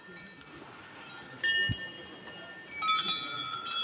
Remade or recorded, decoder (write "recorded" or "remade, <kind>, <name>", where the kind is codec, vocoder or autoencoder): recorded